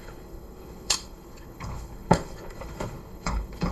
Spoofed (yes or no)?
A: yes